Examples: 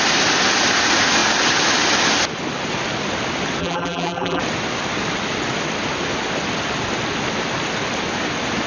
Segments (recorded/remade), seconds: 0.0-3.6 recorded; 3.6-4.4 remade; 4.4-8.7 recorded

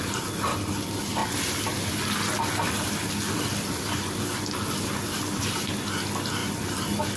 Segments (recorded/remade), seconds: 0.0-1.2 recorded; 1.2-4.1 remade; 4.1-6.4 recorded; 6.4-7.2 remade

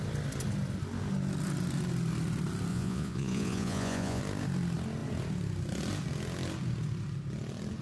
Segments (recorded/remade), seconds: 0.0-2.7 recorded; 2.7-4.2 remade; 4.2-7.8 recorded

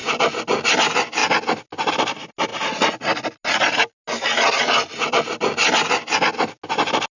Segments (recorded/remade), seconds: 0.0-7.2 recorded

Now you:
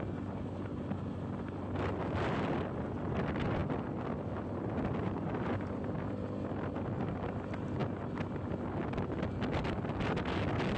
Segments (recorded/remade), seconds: 0.0-10.8 recorded

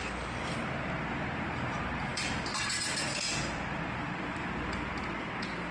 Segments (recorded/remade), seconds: 0.0-2.1 recorded; 2.1-4.9 remade; 4.9-5.7 recorded

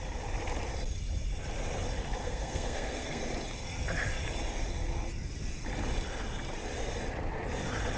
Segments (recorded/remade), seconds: 0.0-2.2 recorded; 2.2-3.2 remade; 3.2-8.0 recorded